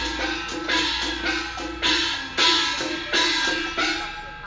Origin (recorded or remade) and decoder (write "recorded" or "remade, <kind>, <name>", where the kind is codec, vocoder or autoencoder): recorded